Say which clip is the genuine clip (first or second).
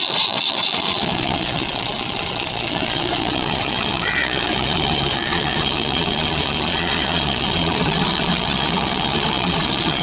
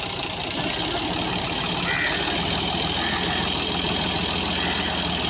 second